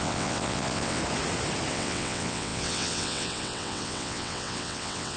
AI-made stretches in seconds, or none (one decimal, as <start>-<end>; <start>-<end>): 0.0-1.0; 1.7-5.2